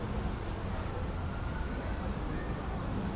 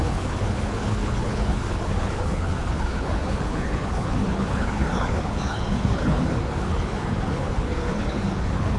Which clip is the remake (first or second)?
second